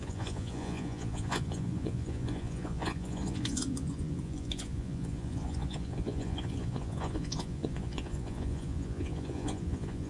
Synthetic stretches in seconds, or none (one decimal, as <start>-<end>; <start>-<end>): 0.0-10.1